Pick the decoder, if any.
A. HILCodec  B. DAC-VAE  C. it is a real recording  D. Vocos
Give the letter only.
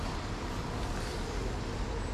C